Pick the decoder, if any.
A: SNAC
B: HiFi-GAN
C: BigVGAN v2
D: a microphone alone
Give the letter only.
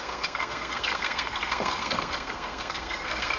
A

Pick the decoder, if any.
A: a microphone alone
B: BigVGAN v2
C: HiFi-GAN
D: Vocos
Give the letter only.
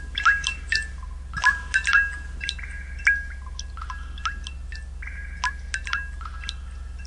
A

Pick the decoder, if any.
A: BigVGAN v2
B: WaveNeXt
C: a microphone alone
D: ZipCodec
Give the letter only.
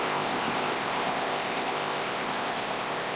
D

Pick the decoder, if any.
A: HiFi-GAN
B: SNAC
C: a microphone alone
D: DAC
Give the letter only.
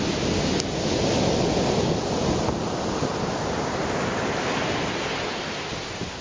C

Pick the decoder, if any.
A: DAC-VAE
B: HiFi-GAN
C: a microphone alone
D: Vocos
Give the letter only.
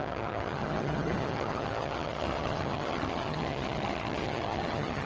B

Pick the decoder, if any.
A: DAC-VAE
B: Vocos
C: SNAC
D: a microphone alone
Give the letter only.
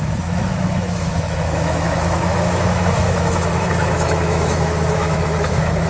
A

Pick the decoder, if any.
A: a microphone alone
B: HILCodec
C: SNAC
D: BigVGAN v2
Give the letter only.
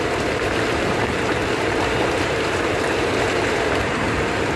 D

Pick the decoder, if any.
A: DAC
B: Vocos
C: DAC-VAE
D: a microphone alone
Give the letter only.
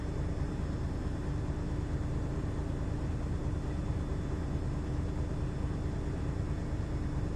D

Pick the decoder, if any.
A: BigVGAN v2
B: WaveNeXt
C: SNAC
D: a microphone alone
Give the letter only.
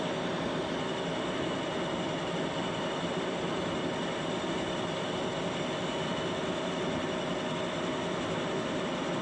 D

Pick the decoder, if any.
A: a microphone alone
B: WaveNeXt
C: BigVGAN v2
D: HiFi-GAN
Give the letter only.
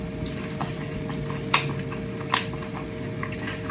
A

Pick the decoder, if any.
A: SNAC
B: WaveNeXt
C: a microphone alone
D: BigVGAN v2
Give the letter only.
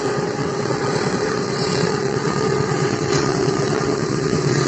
B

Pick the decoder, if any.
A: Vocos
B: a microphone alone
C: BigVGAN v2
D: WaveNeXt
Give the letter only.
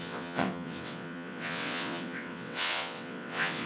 D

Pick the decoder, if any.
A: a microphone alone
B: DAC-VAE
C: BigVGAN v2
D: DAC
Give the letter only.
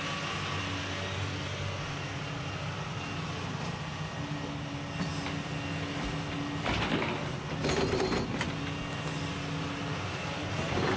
A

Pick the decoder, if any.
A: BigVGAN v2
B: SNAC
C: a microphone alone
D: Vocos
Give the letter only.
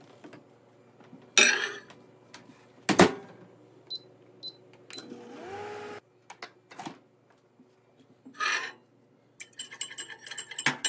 C